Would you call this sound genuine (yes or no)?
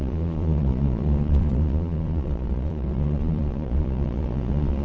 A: no